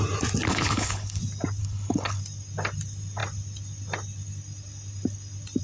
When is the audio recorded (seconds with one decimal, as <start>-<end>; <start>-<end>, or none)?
0.0-0.5; 1.2-1.6; 2.2-5.6